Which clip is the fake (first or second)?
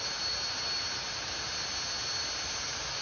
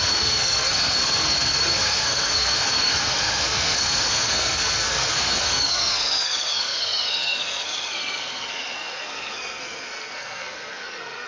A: second